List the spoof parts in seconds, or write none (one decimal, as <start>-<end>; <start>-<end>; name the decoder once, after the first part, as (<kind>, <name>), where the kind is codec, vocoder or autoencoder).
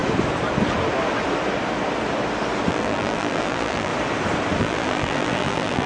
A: 2.7-3.9 (vocoder, BigVGAN v2); 4.6-5.9